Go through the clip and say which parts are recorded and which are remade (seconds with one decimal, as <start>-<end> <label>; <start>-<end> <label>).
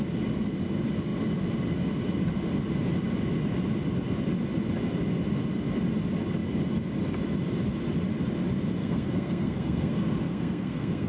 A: 0.0-8.8 recorded; 8.8-11.1 remade